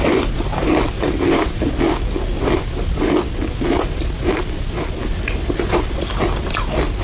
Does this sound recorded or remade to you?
recorded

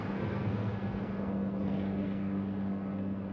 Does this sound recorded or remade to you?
remade